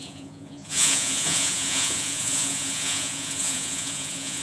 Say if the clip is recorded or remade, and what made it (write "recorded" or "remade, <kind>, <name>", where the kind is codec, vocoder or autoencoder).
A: remade, vocoder, Vocos